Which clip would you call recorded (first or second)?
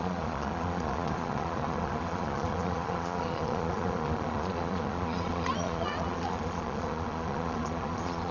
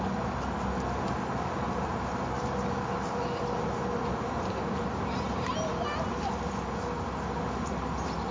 second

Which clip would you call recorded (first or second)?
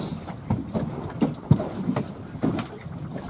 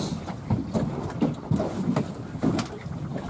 second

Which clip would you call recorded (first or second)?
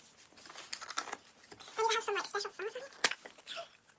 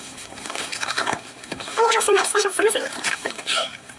first